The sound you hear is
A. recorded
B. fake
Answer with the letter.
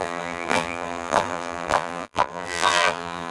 B